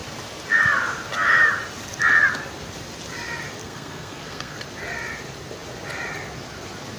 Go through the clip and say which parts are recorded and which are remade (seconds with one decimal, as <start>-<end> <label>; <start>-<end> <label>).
0.0-3.6 recorded; 3.6-4.6 remade; 4.6-7.0 recorded